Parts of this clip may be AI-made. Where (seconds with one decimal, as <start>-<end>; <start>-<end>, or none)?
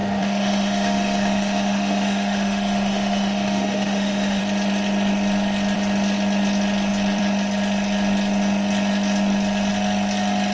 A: 0.0-4.4